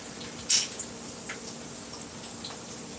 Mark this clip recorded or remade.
recorded